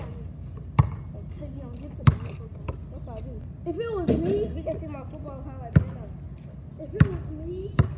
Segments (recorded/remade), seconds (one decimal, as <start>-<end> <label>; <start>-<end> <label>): 0.0-8.0 recorded